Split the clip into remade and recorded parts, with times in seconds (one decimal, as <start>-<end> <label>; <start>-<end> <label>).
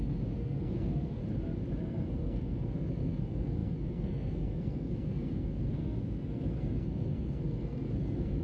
0.0-1.2 remade; 1.2-1.8 recorded; 1.8-8.4 remade